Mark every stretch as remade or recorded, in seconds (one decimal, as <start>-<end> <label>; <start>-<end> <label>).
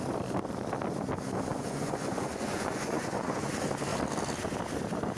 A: 0.0-1.5 recorded; 1.5-3.5 remade; 3.5-5.2 recorded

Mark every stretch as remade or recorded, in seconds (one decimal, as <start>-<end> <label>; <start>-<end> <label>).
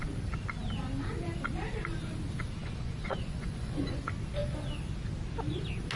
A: 0.0-2.6 recorded; 2.6-4.0 remade; 4.0-6.0 recorded